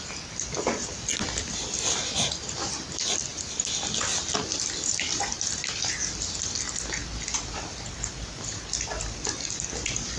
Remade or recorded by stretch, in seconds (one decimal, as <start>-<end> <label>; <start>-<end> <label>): 0.0-10.2 recorded